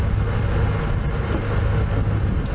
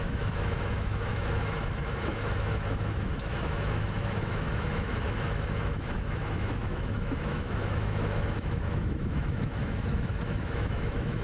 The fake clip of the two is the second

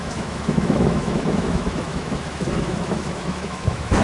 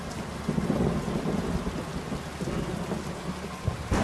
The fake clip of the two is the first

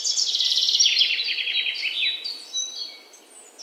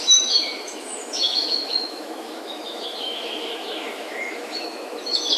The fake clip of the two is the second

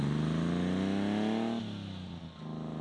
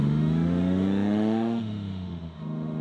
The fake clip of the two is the second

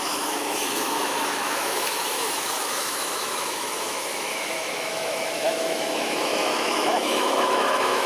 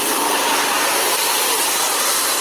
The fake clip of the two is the first